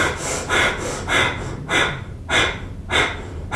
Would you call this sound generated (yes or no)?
no